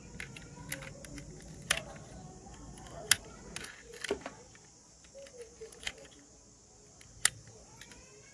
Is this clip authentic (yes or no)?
yes